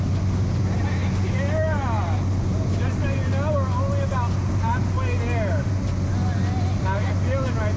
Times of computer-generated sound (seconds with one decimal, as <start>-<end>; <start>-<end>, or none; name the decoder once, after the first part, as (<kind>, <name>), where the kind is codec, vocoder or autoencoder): none

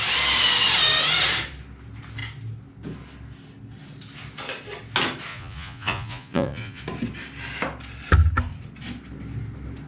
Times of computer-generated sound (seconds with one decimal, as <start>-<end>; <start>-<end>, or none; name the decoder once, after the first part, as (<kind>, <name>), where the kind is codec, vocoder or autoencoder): 5.3-6.8 (vocoder, Vocos)